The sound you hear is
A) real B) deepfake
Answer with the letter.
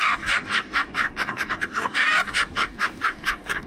B